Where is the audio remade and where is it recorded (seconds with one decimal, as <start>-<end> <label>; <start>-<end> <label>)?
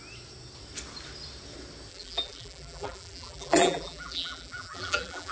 0.0-1.9 recorded; 1.9-5.3 remade